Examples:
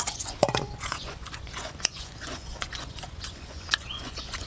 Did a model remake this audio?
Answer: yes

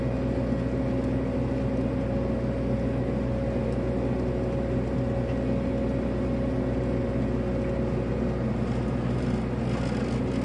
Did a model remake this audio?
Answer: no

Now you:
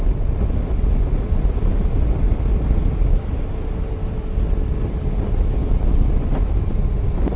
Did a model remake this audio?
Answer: no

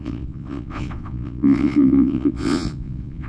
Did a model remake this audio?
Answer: yes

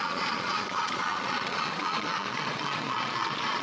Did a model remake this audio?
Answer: yes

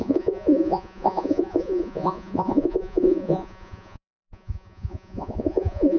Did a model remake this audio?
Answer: yes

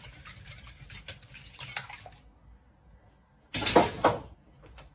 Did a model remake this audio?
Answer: no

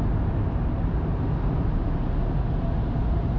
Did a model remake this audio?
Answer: no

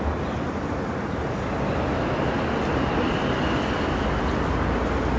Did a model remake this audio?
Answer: no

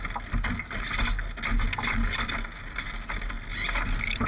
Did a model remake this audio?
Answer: no